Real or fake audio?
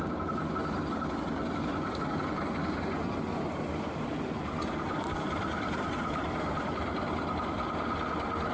real